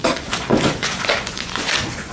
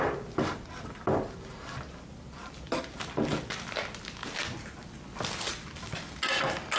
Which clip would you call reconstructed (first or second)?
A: first